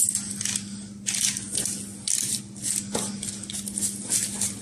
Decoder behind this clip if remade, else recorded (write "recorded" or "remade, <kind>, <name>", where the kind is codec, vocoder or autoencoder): recorded